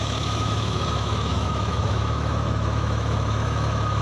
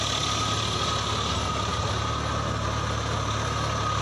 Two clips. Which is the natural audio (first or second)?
second